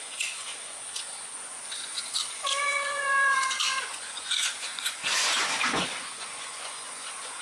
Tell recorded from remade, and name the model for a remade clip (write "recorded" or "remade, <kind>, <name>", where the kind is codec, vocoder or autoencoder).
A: remade, vocoder, Vocos